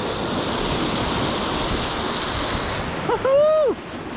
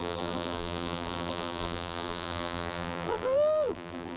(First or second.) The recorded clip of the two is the first